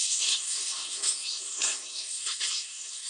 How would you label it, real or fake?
fake